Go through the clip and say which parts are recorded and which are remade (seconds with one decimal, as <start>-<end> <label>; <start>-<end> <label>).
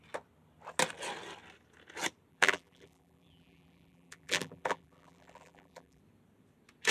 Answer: 0.0-2.3 recorded; 2.3-6.0 remade; 6.0-6.9 recorded